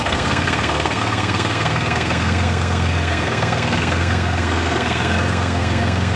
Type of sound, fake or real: fake